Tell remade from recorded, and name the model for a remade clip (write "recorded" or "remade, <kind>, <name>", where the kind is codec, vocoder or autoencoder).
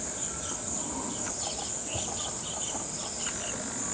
recorded